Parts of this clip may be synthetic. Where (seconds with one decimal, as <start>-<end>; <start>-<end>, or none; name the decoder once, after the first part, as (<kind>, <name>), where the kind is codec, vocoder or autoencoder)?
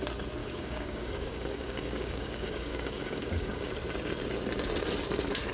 0.4-3.7 (codec, DAC)